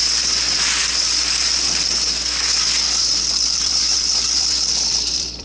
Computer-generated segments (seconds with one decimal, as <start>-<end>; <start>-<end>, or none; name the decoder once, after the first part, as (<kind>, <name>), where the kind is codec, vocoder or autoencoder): 3.2-5.4 (vocoder, BigVGAN v2)